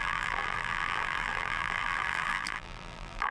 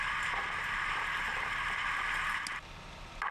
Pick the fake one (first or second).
first